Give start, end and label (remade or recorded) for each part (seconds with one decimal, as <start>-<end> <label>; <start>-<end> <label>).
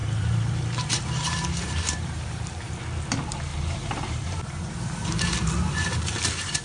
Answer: 0.0-2.7 remade; 2.7-3.5 recorded; 3.5-6.6 remade